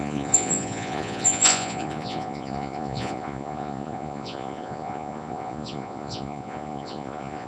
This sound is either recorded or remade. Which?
remade